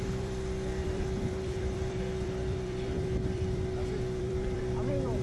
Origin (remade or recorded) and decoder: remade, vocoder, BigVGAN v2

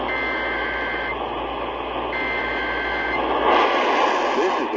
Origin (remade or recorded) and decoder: recorded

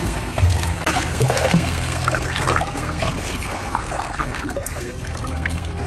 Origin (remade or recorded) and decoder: remade, codec, SNAC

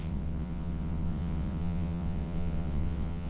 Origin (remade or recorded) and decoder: remade, vocoder, WaveNeXt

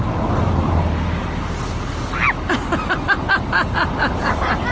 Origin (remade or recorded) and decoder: recorded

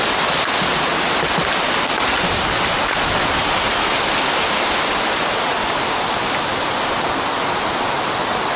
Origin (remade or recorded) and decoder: recorded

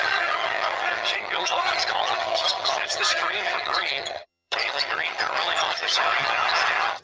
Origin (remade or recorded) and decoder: remade, vocoder, HiFi-GAN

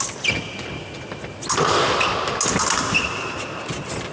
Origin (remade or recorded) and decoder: recorded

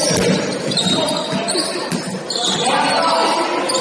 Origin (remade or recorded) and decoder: recorded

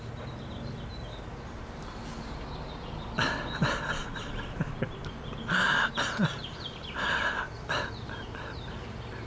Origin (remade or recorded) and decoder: recorded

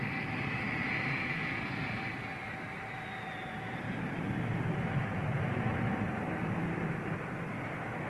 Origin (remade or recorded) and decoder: recorded